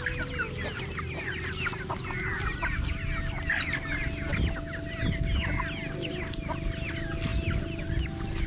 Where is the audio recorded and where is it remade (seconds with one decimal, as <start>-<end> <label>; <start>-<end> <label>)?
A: 0.0-8.5 recorded